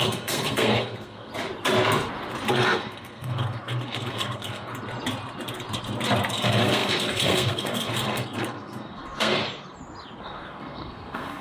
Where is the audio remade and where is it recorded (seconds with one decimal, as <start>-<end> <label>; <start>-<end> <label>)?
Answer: 0.0-1.3 remade; 1.3-2.5 recorded; 2.5-4.7 remade; 4.7-6.3 recorded; 6.3-9.4 remade; 9.4-10.2 recorded; 10.2-11.4 remade